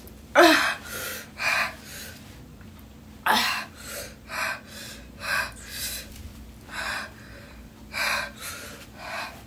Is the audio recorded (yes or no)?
no